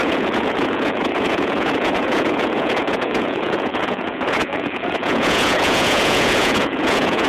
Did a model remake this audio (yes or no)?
yes